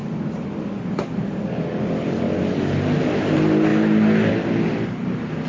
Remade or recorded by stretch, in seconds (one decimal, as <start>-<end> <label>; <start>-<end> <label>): 0.0-5.5 recorded